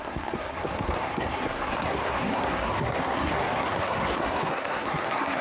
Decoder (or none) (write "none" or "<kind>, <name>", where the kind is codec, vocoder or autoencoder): codec, SNAC